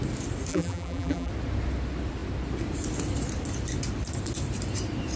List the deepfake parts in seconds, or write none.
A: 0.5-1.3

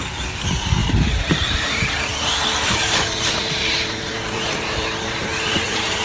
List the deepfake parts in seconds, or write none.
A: 0.0-6.0